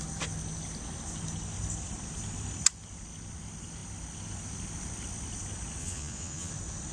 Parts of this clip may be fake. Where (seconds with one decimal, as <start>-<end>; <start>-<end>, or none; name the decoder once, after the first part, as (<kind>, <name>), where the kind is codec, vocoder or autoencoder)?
5.8-6.5 (vocoder, Vocos)